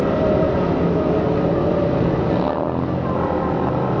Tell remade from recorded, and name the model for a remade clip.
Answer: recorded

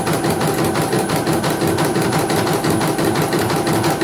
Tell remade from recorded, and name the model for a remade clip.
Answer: recorded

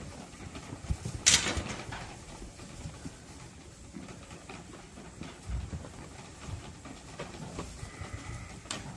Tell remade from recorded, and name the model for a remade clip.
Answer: recorded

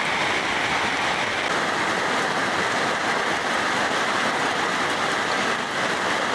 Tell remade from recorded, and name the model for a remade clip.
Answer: recorded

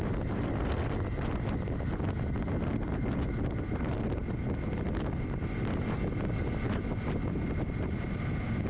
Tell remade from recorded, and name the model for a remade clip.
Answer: recorded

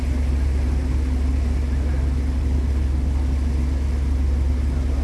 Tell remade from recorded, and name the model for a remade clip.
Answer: recorded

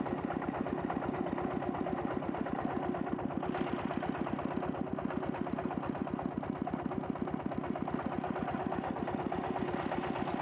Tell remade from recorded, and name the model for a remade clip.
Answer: recorded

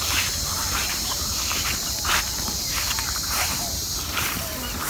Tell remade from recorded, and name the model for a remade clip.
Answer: remade, vocoder, BigVGAN v2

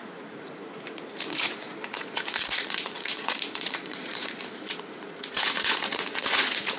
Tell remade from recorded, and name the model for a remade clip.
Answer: remade, vocoder, Vocos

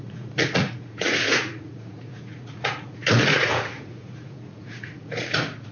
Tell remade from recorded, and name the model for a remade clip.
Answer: remade, vocoder, Vocos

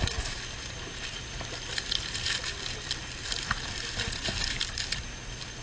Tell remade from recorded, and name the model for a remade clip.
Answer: remade, vocoder, BigVGAN v2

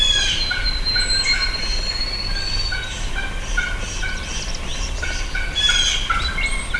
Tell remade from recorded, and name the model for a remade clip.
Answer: recorded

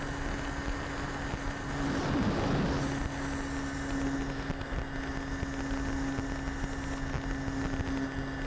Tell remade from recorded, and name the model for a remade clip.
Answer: recorded